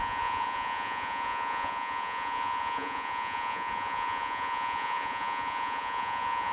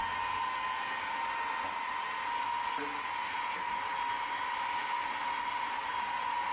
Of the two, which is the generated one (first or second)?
first